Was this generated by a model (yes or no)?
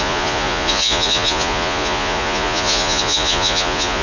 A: yes